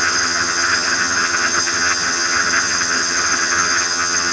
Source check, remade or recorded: remade